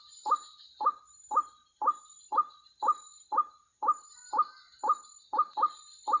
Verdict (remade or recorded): remade